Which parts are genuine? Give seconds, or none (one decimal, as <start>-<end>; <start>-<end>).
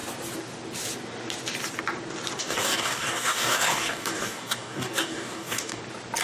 0.0-2.4; 5.8-6.2